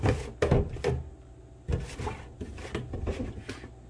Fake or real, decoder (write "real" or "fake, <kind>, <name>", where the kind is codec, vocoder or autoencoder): real